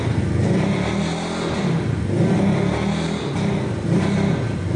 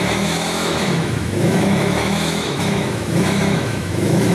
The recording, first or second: first